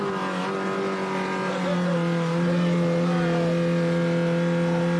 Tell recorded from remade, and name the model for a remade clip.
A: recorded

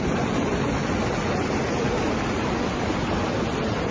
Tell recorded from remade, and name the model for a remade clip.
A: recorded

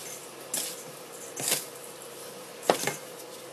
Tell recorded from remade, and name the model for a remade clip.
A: recorded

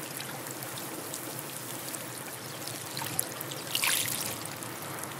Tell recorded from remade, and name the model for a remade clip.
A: recorded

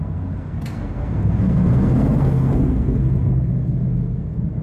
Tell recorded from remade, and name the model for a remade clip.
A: remade, codec, SNAC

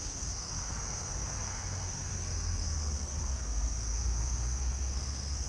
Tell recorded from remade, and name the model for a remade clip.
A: remade, codec, SNAC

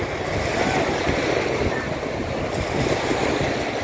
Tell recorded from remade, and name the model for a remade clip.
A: recorded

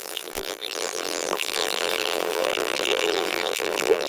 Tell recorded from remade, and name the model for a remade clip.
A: remade, vocoder, BigVGAN v2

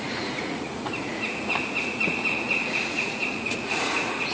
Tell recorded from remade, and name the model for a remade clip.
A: remade, vocoder, Vocos